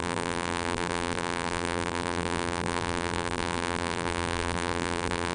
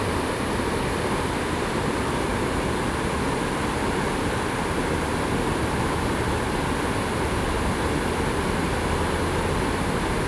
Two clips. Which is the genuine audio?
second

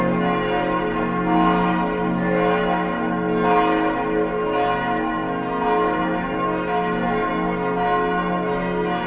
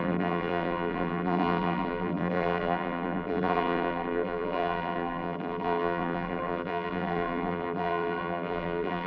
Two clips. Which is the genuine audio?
first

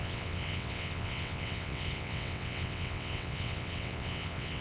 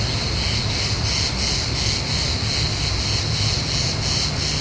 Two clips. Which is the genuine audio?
second